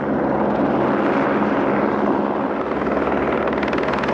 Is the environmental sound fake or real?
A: real